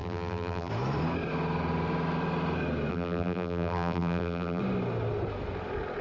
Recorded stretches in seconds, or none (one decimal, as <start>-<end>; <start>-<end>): 0.7-2.9; 4.6-6.0